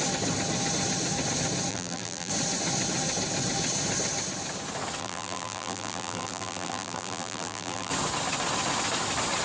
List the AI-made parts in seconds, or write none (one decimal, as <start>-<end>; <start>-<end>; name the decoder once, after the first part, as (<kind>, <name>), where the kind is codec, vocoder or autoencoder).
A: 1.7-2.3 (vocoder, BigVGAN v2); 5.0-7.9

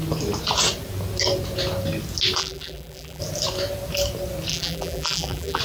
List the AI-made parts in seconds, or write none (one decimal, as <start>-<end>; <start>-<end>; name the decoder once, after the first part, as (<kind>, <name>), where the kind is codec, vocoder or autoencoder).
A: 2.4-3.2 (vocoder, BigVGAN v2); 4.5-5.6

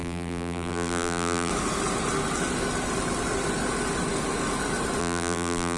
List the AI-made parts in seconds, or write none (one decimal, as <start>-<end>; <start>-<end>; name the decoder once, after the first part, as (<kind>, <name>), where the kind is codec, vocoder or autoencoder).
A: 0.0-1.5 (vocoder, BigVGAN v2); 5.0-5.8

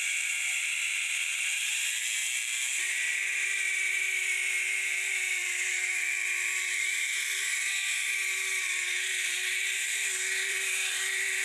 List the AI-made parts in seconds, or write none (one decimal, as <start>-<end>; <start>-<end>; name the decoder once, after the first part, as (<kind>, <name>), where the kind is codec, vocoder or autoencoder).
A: 0.0-11.4 (vocoder, BigVGAN v2)

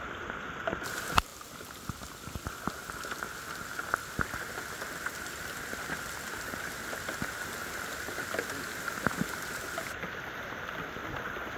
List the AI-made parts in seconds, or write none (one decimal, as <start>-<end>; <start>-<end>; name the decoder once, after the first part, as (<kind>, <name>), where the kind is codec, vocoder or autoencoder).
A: none